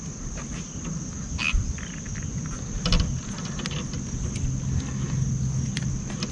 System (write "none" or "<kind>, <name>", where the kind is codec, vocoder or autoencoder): none